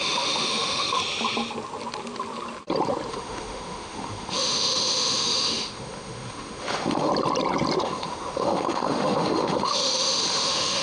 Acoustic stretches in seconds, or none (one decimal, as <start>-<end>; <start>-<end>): 1.0-3.1; 7.1-7.8